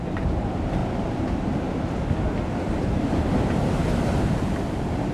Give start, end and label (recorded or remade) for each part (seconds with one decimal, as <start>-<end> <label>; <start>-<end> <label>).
0.0-0.8 remade; 0.8-2.7 recorded; 2.7-5.1 remade